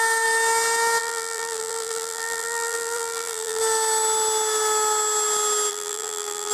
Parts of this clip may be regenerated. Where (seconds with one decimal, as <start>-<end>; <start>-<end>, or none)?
1.0-3.6; 5.7-6.5